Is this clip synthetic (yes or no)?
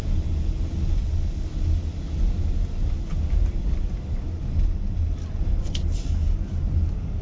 no